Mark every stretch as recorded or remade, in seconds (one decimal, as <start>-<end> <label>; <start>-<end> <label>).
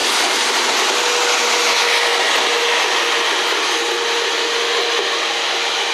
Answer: 0.0-5.9 recorded